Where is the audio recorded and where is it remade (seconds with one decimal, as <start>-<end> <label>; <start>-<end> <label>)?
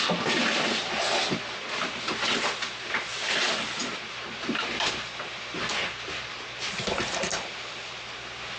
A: 0.0-8.6 recorded